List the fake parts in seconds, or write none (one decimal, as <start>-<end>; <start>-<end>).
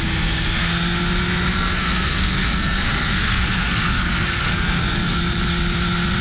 1.5-5.2